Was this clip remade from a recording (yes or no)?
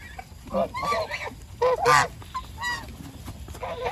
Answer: no